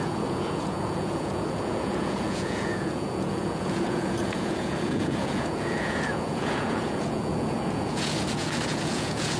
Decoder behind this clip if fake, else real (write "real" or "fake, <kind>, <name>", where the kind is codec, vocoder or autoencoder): fake, vocoder, Vocos